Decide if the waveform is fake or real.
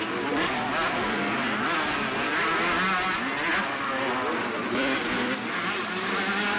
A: real